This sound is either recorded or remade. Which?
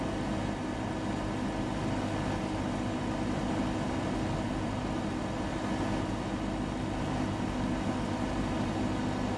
recorded